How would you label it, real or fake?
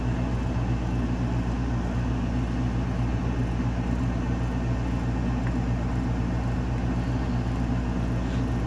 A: real